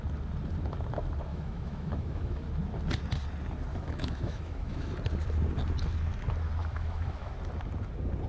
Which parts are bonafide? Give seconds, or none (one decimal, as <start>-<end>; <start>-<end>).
0.0-1.3; 2.5-3.7; 4.9-6.6; 7.3-8.3